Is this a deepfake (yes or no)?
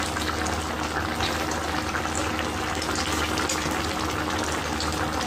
no